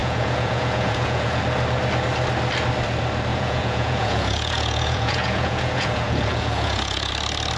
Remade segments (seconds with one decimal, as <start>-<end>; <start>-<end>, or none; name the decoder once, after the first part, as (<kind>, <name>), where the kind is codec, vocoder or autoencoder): 0.0-1.4 (vocoder, Vocos); 3.3-7.1